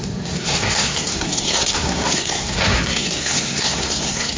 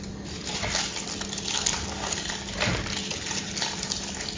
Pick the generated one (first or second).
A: first